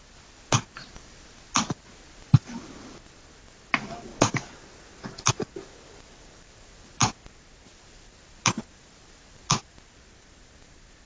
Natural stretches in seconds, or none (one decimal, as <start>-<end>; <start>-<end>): 0.0-11.1